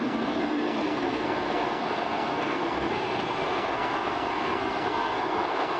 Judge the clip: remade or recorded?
remade